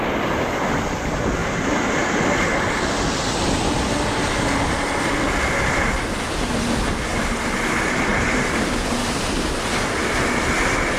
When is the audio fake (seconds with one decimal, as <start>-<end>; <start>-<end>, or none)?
1.4-2.2; 7.1-7.6; 8.1-8.7